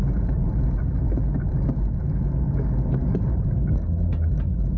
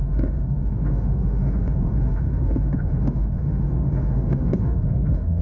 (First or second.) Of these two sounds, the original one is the first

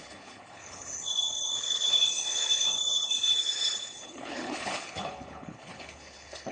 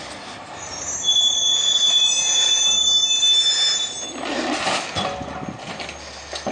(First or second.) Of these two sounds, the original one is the second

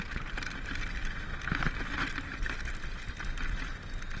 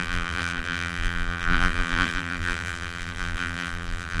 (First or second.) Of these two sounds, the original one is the first